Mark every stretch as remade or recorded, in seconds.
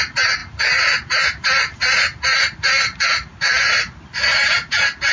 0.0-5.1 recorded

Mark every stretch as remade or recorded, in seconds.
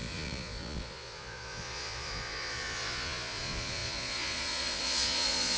0.0-5.6 remade